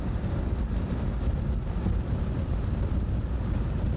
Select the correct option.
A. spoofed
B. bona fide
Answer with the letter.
B